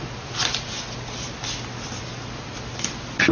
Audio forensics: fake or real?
real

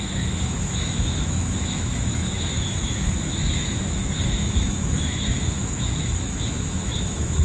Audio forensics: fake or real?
fake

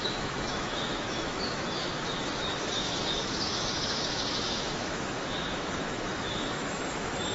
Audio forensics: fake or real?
fake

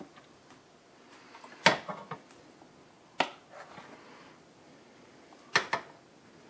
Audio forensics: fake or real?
real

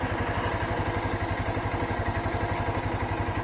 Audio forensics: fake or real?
real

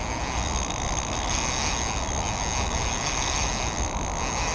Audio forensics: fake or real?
real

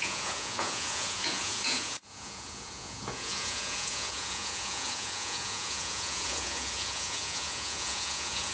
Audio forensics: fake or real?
fake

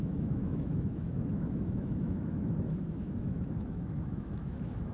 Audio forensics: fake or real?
fake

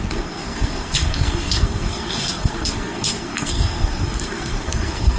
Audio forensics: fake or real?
fake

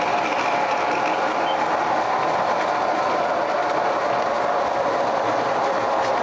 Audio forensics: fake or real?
real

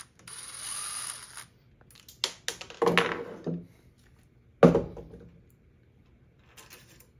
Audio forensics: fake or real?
real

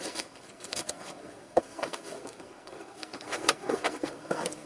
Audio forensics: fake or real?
fake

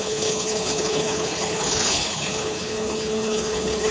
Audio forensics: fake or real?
fake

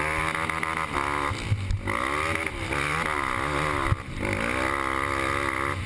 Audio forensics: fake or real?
real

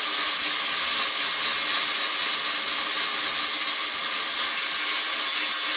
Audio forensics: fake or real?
real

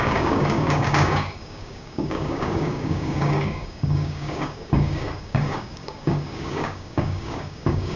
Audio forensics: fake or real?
fake